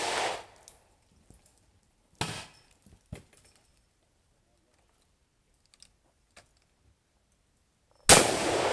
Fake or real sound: real